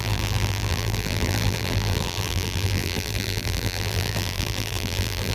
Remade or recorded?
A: remade